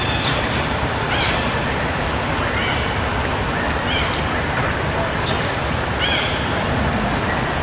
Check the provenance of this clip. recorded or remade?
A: recorded